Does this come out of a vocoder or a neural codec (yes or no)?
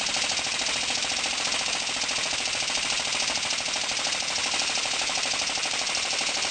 no